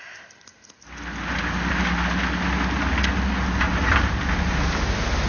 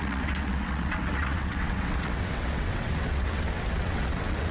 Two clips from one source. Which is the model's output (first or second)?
second